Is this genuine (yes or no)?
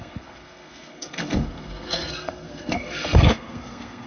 no